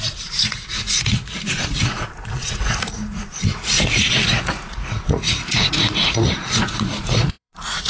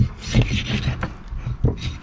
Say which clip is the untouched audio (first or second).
second